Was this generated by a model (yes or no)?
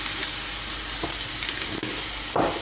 no